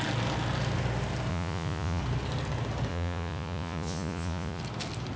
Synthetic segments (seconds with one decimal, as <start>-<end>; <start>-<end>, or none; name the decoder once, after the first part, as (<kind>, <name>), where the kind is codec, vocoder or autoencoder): 1.3-2.0 (vocoder, Vocos); 2.9-4.6